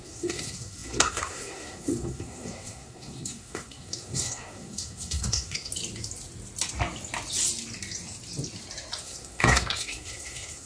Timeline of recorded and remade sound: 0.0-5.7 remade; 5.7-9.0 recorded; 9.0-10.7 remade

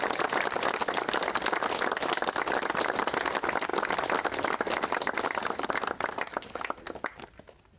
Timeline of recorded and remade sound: 0.0-7.8 recorded

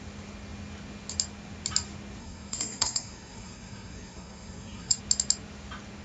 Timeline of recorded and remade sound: 0.0-2.2 recorded; 2.2-5.0 remade; 5.0-6.0 recorded

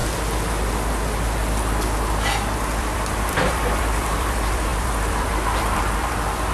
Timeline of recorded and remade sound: 0.0-2.8 recorded; 2.8-6.5 remade

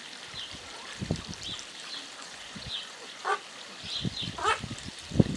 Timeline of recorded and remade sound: 0.0-2.2 recorded; 2.2-3.3 remade; 3.3-5.4 recorded

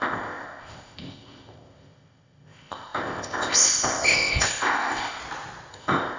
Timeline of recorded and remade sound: 0.0-5.2 remade; 5.2-5.7 recorded; 5.7-6.2 remade